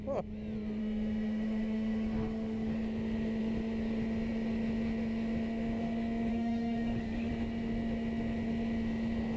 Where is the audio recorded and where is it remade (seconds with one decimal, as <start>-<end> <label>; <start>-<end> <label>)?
0.0-0.8 recorded; 0.8-2.7 remade; 2.7-6.3 recorded; 6.3-7.3 remade; 7.3-9.4 recorded